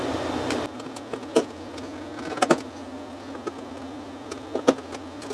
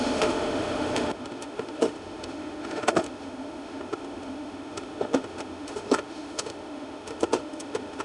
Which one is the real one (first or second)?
first